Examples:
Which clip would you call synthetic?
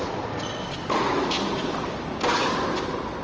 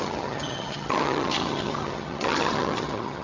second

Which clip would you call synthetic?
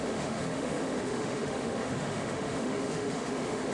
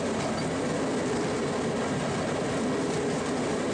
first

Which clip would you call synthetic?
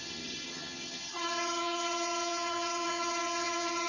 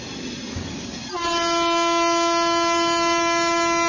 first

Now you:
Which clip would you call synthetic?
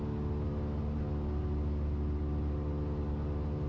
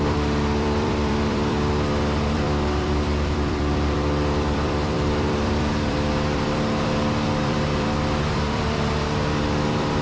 second